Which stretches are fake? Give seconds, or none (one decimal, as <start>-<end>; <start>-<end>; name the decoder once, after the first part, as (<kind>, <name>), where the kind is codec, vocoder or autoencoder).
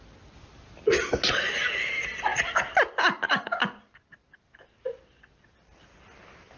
none